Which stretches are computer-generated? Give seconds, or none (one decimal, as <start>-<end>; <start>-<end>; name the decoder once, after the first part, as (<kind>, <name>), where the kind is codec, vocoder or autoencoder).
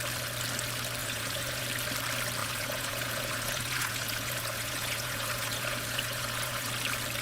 1.0-1.6 (vocoder, Vocos); 2.4-6.7